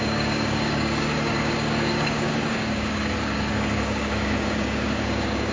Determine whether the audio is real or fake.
fake